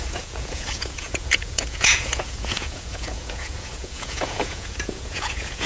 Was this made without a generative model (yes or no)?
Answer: no